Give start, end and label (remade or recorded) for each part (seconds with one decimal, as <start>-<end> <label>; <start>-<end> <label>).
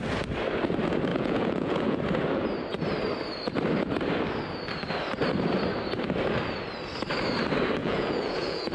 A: 0.0-1.1 recorded; 1.1-2.0 remade; 2.0-7.8 recorded; 7.8-8.7 remade